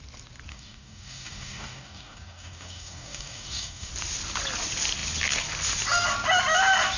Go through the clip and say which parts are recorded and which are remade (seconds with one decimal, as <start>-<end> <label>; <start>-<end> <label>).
0.0-0.5 recorded; 0.5-3.9 remade; 3.9-7.0 recorded